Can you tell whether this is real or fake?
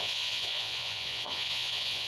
fake